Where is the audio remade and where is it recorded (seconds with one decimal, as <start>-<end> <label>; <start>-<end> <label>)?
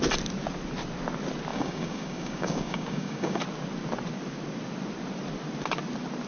0.0-1.5 recorded; 1.5-3.4 remade; 3.4-6.3 recorded